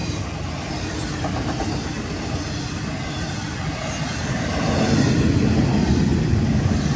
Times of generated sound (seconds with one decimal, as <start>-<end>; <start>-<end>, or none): none